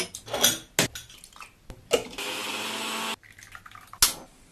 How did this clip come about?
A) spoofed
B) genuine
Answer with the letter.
B